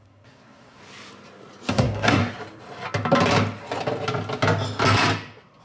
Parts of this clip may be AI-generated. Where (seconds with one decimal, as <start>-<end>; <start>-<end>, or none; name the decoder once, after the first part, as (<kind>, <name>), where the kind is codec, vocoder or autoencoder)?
0.0-0.8 (codec, SNAC); 1.7-2.2